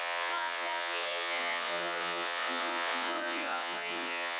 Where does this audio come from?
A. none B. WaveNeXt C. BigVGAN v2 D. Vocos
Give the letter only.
B